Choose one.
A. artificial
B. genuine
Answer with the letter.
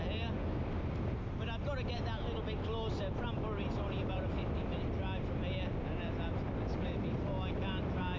B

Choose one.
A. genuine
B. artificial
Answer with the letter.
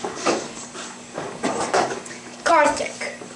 B